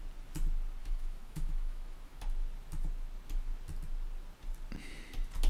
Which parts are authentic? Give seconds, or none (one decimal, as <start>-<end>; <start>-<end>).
0.0-0.8; 2.2-5.5